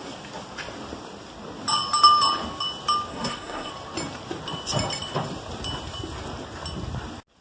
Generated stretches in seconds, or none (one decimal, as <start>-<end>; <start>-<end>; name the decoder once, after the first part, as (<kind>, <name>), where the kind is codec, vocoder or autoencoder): 3.1-3.7 (codec, SNAC)

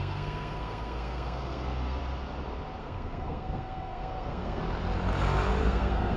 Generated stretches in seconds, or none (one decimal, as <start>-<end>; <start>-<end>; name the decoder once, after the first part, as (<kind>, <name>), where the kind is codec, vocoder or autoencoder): 0.0-2.0 (codec, SNAC); 2.8-4.6; 5.6-6.2